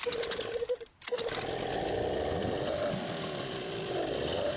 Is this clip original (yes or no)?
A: yes